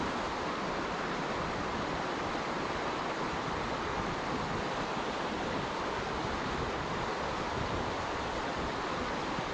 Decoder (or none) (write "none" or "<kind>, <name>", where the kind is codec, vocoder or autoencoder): none